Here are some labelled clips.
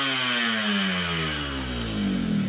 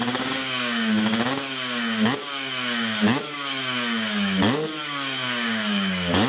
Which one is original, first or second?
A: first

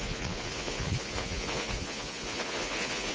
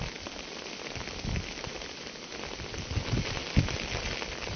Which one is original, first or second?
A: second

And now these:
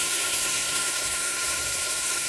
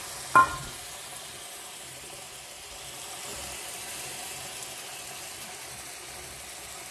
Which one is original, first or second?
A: second